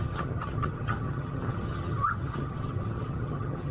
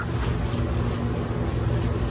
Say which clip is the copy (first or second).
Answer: first